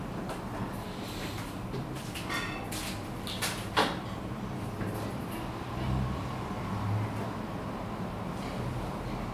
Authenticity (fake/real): real